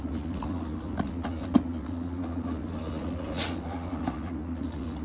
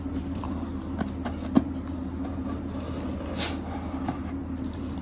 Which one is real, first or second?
second